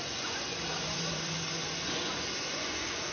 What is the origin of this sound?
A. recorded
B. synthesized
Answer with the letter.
B